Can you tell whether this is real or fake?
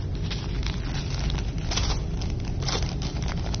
real